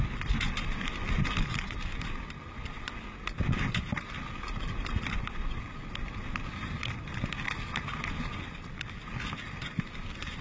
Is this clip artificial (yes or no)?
no